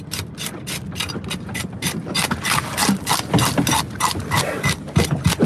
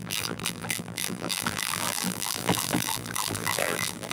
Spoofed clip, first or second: second